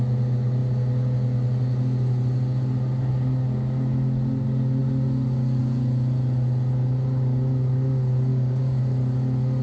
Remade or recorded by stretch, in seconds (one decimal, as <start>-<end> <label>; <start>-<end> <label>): 0.0-8.3 recorded; 8.3-8.8 remade; 8.8-9.6 recorded